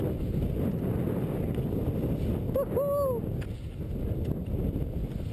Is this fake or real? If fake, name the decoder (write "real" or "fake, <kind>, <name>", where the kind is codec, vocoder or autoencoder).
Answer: real